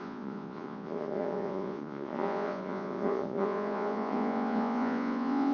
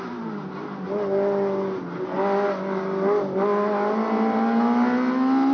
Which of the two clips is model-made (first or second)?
first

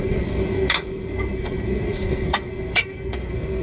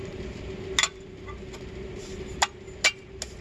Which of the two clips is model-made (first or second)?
first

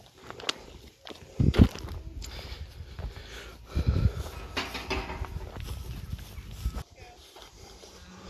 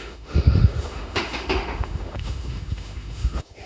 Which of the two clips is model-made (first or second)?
second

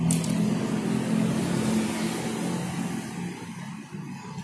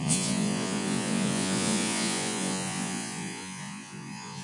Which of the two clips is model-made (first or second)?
second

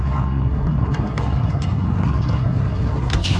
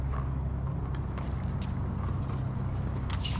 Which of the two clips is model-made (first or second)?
first